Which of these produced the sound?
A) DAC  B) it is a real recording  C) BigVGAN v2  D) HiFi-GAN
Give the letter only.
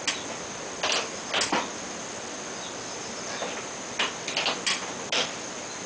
B